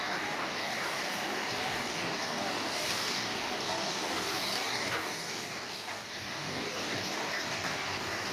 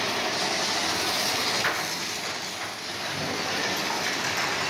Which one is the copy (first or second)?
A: first